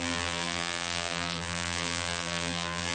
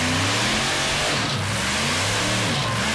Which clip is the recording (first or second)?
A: second